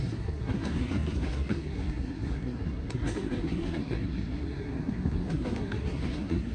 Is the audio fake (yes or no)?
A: yes